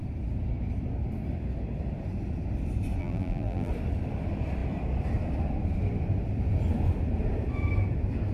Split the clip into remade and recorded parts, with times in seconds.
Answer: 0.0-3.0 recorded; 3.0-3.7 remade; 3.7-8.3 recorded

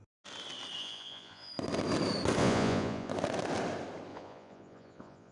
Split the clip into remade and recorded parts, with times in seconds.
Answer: 0.0-0.8 recorded; 0.8-1.5 remade; 1.5-2.4 recorded; 2.4-3.1 remade; 3.1-4.1 recorded; 4.1-5.3 remade

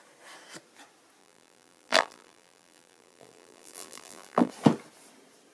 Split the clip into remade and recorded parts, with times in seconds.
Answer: 0.0-1.2 recorded; 1.2-4.5 remade; 4.5-5.5 recorded

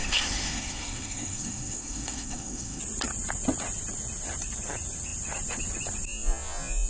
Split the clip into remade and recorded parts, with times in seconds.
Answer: 0.0-2.8 remade; 2.8-6.9 recorded

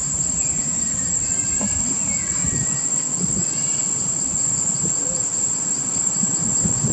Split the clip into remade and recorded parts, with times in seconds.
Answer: 0.0-3.8 remade; 3.8-4.7 recorded; 4.7-6.9 remade